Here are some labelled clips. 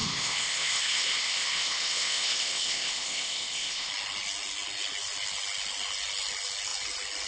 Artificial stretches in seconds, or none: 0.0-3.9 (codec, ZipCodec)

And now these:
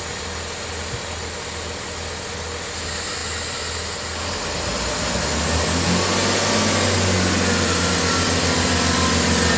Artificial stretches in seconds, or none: none

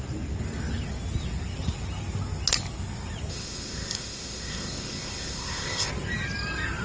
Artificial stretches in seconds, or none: 3.3-5.9 (codec, ZipCodec)

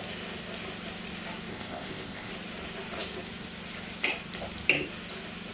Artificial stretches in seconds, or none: 1.5-2.3 (codec, ZipCodec)

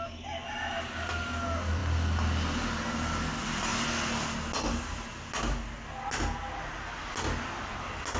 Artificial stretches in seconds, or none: none